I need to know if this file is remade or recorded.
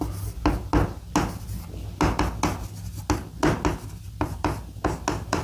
recorded